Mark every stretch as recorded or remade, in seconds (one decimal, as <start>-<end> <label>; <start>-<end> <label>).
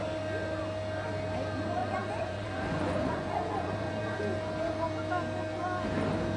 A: 0.0-1.8 recorded; 1.8-4.2 remade; 4.2-6.4 recorded